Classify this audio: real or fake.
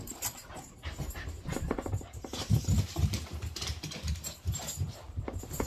fake